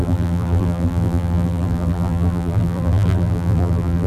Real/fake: fake